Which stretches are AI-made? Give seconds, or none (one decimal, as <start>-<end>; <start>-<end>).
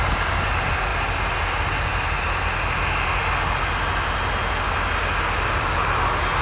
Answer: none